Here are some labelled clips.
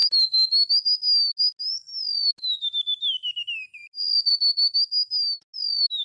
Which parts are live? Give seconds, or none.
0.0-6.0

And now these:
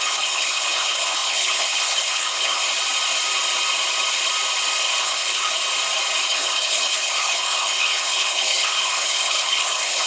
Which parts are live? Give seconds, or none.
2.6-5.0; 5.5-6.3

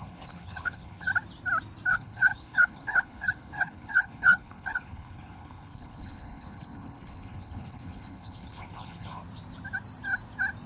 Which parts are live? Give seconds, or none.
1.1-1.9; 9.2-10.7